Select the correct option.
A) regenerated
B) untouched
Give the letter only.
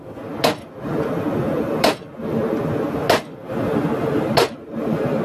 B